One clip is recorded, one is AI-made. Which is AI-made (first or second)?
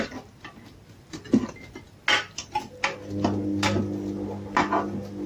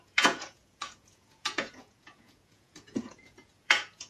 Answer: second